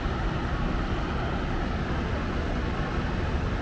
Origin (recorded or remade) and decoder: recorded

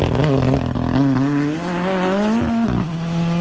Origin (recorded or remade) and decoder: recorded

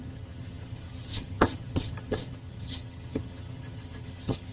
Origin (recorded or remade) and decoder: remade, vocoder, HiFi-GAN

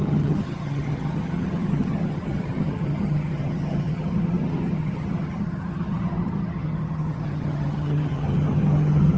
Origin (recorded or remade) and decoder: remade, vocoder, HiFi-GAN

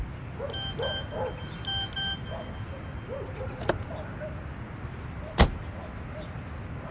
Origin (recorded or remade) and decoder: recorded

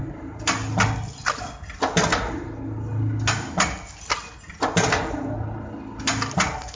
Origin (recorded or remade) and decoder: recorded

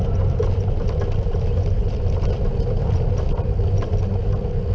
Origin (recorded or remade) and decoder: recorded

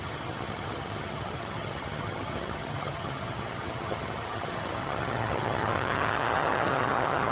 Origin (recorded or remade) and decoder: remade, vocoder, HiFi-GAN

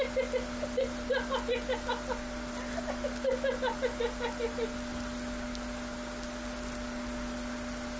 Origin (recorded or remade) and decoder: recorded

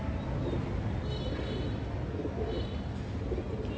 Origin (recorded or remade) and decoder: recorded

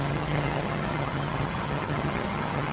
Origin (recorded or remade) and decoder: remade, vocoder, HiFi-GAN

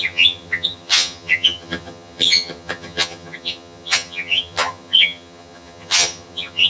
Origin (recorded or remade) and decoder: remade, vocoder, HiFi-GAN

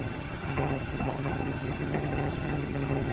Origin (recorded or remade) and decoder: remade, vocoder, HiFi-GAN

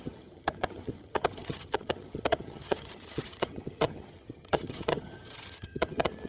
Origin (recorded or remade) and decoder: remade, vocoder, HiFi-GAN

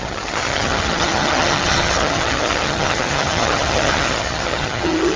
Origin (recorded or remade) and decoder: remade, vocoder, HiFi-GAN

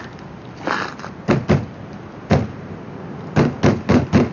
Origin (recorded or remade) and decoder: recorded